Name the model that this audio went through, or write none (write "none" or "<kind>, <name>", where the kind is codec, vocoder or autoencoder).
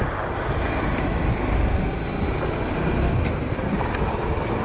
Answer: none